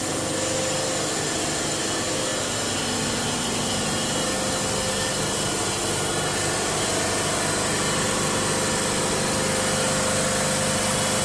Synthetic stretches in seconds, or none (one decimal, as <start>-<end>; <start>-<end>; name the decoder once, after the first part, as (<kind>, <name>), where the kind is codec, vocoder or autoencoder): none